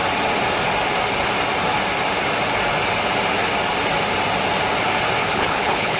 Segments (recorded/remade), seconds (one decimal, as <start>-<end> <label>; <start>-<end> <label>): 0.0-5.2 recorded; 5.2-6.0 remade